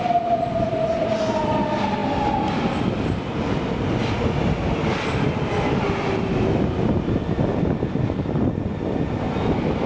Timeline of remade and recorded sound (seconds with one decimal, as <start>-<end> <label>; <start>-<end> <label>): 0.0-9.9 recorded